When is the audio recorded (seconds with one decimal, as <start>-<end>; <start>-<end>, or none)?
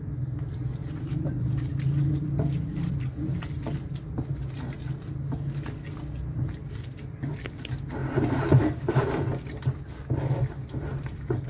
0.0-0.8; 2.9-8.0; 9.8-11.5